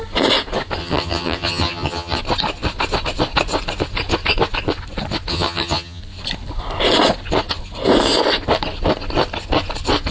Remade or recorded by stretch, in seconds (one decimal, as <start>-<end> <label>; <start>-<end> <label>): 0.0-0.8 recorded; 0.8-2.2 remade; 2.2-5.3 recorded; 5.3-6.0 remade; 6.0-10.1 recorded